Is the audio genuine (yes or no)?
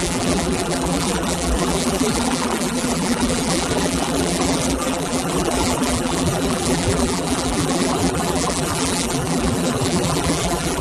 no